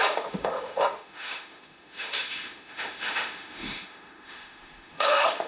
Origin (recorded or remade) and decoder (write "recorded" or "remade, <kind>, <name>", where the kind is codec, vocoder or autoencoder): remade, autoencoder, DAC-VAE